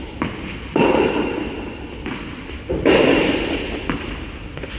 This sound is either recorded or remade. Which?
recorded